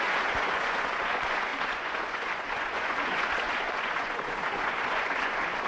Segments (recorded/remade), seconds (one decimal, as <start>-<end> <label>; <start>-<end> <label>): 0.0-5.7 remade